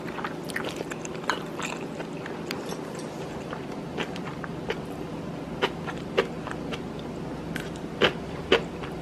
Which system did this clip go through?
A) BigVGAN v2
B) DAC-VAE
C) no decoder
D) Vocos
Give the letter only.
C